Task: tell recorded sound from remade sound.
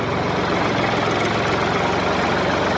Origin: recorded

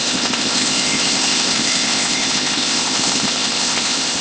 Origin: remade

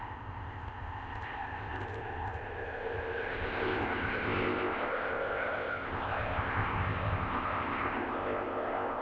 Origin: remade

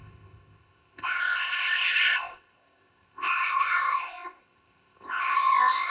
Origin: remade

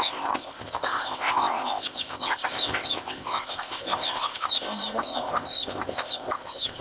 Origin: remade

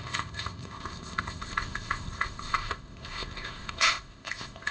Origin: remade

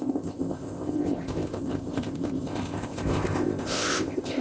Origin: remade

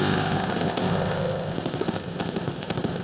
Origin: remade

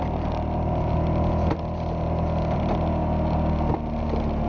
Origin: recorded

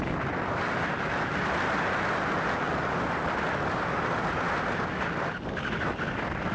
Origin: recorded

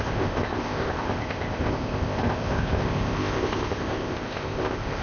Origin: remade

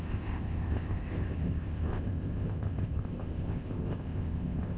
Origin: remade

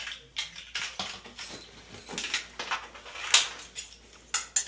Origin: recorded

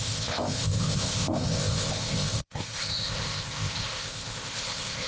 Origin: remade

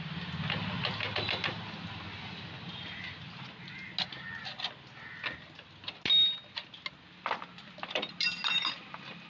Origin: recorded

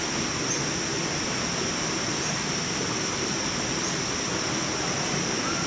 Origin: recorded